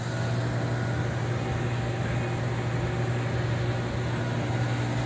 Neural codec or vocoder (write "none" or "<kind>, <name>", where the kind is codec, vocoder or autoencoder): none